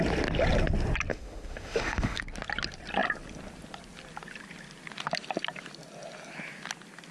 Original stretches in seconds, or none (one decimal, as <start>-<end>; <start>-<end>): 0.0-1.1; 2.2-7.1